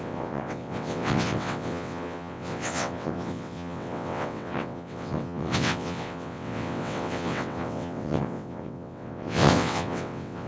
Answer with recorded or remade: remade